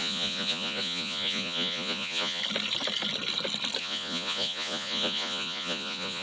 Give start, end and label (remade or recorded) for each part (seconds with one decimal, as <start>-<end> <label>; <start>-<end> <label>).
0.0-2.4 remade; 2.4-3.8 recorded; 3.8-6.2 remade